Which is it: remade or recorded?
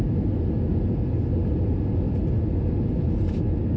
recorded